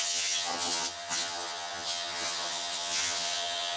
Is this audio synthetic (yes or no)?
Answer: yes